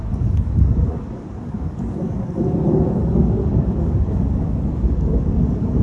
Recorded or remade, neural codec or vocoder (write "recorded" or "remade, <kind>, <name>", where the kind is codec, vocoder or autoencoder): remade, codec, DAC